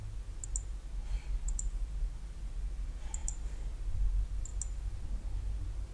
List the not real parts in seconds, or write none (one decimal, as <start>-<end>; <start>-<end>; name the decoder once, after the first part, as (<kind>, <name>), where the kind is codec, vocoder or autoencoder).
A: none